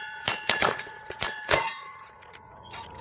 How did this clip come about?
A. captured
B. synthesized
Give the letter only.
B